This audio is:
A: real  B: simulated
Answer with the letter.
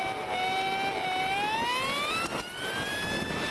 A